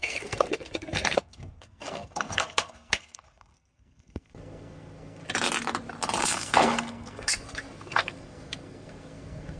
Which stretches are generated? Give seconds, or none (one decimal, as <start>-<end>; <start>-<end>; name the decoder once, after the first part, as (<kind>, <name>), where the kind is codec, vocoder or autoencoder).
0.0-5.2 (codec, SNAC); 6.2-9.6